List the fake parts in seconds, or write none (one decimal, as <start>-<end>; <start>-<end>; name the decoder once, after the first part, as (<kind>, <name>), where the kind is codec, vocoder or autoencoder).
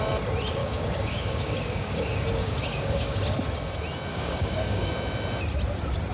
0.6-3.2 (codec, DAC); 4.1-4.9